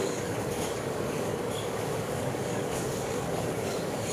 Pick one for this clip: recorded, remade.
remade